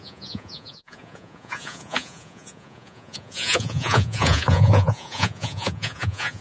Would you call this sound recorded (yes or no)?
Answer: no